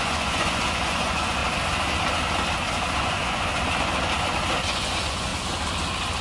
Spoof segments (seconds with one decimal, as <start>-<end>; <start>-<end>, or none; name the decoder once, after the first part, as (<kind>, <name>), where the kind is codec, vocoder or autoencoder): 0.0-1.4 (vocoder, Vocos); 3.0-3.5; 4.6-5.3